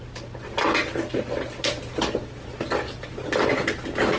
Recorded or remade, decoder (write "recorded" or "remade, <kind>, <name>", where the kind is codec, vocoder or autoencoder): recorded